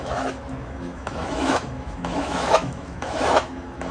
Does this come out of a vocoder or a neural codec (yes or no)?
yes